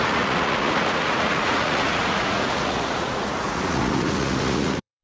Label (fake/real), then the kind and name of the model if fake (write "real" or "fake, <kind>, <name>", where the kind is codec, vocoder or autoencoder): fake, vocoder, Vocos